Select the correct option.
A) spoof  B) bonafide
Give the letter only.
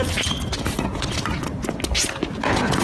B